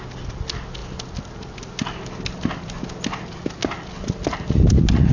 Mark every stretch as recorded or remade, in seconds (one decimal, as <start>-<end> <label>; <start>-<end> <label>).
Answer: 0.0-5.1 recorded